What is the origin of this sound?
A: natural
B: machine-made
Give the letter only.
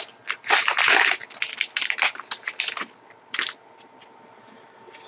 A